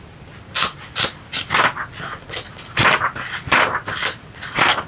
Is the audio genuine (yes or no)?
yes